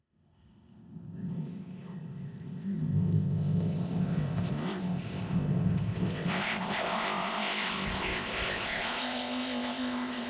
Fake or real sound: fake